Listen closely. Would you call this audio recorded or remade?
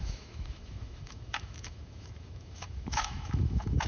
remade